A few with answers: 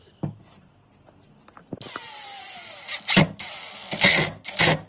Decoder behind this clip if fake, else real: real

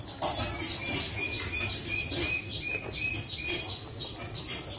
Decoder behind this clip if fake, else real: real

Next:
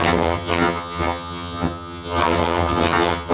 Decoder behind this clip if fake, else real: fake, vocoder, HiFi-GAN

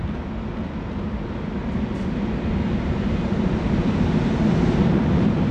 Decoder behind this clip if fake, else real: real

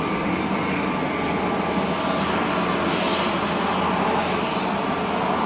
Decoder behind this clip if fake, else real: real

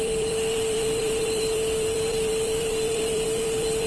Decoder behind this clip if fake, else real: fake, vocoder, BigVGAN v2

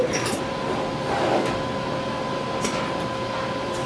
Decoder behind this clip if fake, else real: real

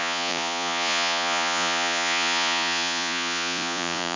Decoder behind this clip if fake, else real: fake, vocoder, Vocos